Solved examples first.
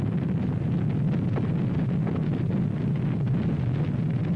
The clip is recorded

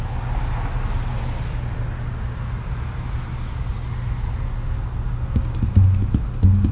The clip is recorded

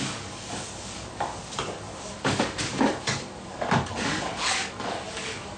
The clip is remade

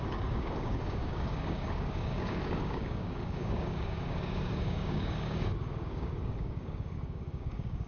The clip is remade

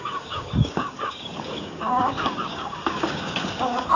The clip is remade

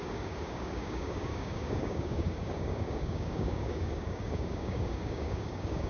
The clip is remade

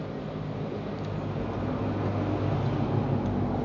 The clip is recorded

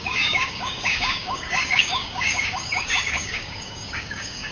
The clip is remade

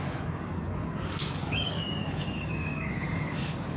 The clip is remade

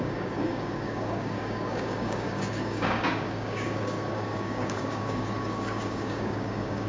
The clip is remade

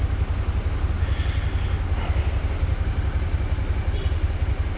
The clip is recorded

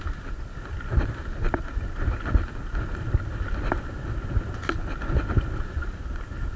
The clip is recorded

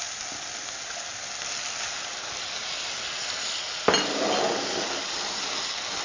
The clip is recorded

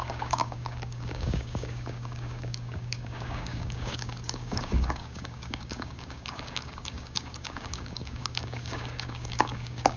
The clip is remade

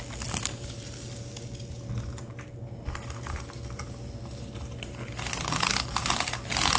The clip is recorded